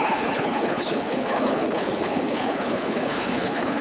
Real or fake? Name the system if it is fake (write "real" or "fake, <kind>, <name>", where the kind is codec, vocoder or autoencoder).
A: fake, codec, HILCodec